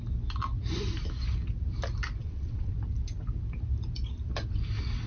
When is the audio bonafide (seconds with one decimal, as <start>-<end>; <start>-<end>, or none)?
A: 0.0-2.2; 2.7-5.1